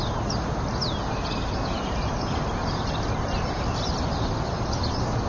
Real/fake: real